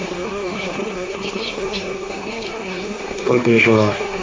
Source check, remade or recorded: remade